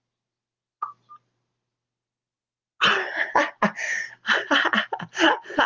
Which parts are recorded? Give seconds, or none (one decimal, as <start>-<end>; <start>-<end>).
0.0-5.7